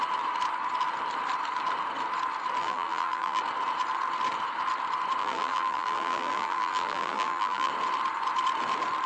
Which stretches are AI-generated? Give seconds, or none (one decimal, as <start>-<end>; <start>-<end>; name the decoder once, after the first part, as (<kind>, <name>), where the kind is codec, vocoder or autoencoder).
2.6-3.4 (vocoder, BigVGAN v2); 5.2-7.7